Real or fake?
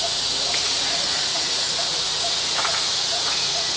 fake